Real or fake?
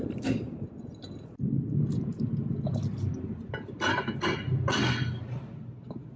real